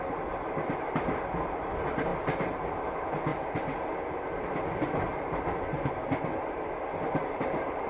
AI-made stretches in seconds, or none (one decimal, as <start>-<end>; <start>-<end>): 0.0-5.1; 7.2-7.9